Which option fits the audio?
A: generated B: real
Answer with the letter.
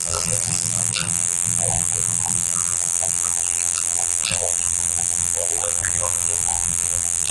A